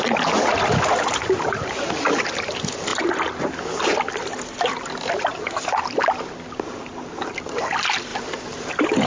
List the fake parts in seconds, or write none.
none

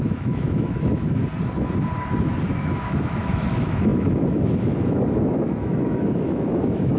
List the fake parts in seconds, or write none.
0.0-1.2 (autoencoder, DAC-VAE); 2.6-7.0

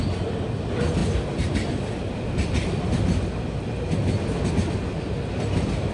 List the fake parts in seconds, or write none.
none

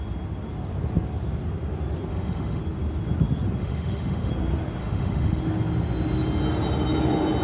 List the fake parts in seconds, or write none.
2.1-2.6 (autoencoder, DAC-VAE); 3.6-4.3; 4.8-5.4

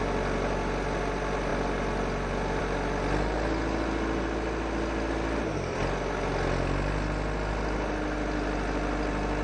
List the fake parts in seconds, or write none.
none

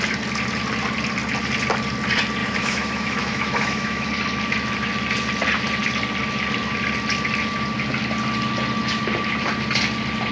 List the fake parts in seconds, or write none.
2.4-4.1 (autoencoder, DAC-VAE)